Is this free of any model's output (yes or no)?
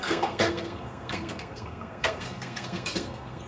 no